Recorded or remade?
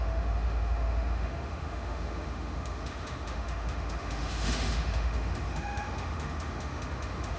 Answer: remade